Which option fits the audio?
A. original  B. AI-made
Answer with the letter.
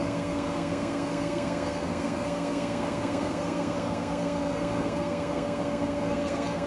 B